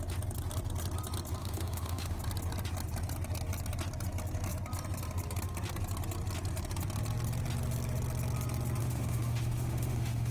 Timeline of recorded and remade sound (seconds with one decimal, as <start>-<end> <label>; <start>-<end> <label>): 0.0-1.4 recorded; 1.4-2.2 remade; 2.2-8.8 recorded; 8.8-10.3 remade